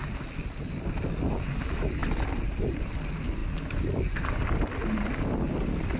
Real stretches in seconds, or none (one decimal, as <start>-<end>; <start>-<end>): 0.0-6.0